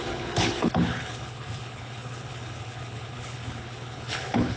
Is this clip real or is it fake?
fake